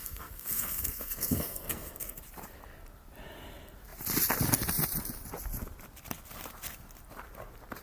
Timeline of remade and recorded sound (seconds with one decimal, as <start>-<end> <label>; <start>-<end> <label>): 0.0-2.2 remade; 2.2-7.8 recorded